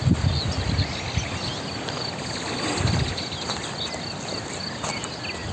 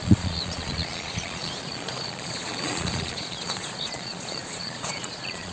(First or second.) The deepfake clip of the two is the second